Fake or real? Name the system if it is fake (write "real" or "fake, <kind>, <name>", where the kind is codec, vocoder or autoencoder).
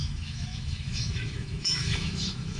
fake, autoencoder, DAC-VAE